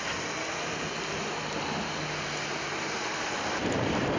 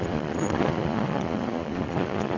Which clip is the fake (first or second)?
second